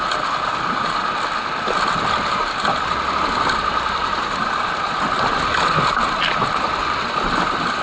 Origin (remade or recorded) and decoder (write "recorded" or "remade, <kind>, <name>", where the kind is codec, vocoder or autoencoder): recorded